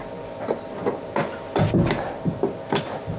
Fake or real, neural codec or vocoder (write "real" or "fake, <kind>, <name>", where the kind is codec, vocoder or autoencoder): real